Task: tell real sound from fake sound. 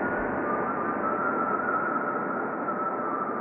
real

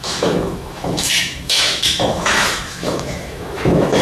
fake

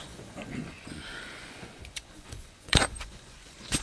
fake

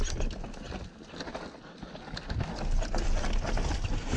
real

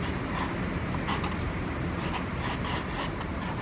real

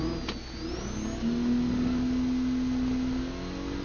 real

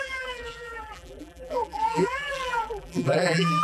fake